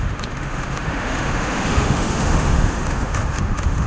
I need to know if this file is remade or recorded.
remade